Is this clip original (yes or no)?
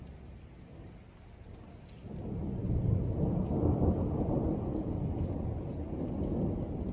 yes